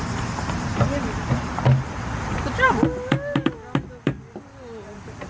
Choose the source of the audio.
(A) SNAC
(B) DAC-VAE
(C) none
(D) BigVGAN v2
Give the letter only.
C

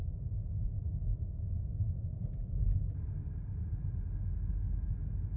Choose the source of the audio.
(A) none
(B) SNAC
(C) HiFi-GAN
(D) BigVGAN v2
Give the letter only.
A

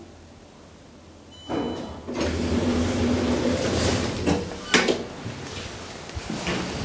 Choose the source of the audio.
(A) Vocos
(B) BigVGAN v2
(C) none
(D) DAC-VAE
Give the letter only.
C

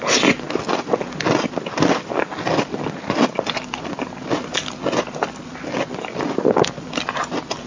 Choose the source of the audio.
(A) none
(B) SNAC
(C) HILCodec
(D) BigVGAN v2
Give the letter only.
A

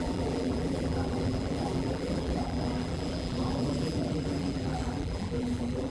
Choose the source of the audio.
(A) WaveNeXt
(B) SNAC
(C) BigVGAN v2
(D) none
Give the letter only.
C